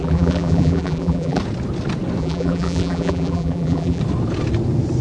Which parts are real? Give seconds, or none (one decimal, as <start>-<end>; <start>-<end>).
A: 1.4-2.2; 4.0-5.0